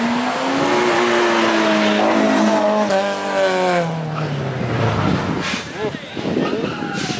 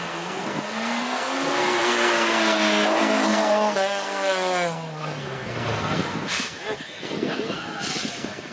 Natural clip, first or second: first